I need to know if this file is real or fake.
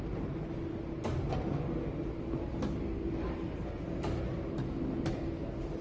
real